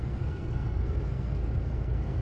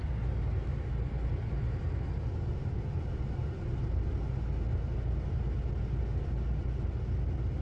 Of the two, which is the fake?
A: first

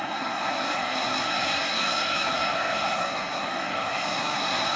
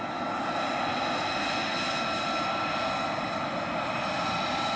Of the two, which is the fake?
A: first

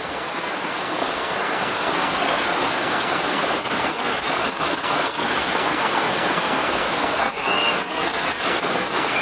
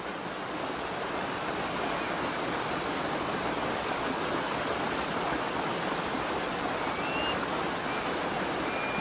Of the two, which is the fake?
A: first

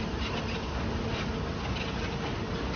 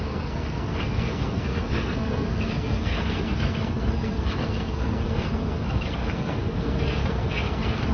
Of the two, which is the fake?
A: second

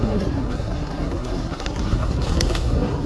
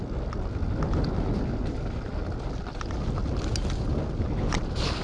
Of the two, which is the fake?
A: first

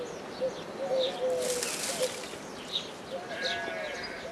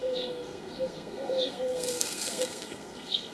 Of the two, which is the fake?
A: second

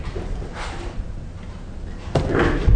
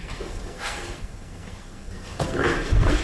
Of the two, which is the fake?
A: second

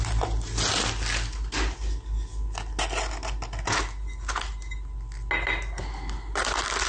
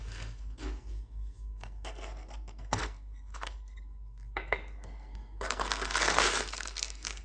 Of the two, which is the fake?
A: second